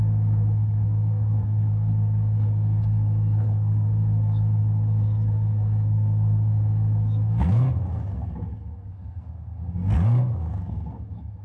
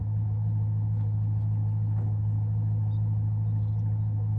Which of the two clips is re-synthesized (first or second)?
first